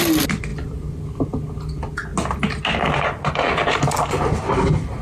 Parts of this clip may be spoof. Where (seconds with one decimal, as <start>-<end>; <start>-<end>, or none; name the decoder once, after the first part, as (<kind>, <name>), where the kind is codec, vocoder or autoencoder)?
none